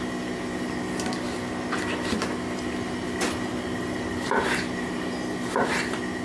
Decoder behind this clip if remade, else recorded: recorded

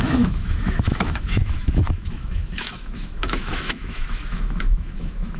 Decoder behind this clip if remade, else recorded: remade, autoencoder, DAC-VAE